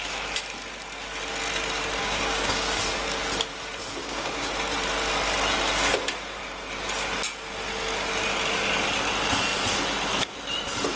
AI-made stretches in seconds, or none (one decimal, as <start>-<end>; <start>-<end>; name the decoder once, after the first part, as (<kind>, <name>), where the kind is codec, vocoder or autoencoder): 2.0-2.8 (codec, DAC); 4.0-4.5